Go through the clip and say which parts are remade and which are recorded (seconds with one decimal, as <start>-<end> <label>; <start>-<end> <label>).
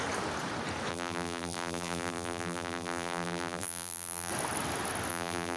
0.0-0.9 recorded; 0.9-4.3 remade; 4.3-5.1 recorded; 5.1-5.6 remade